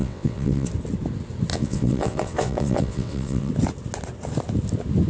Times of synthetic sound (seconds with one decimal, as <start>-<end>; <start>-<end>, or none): 0.0-0.7; 1.5-3.5